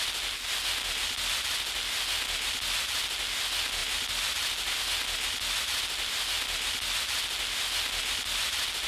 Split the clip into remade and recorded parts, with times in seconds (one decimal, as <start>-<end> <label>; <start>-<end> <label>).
0.0-8.9 recorded